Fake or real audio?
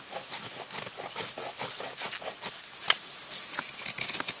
real